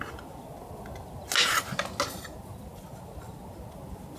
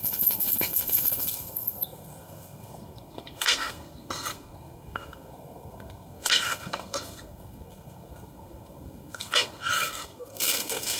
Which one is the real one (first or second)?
first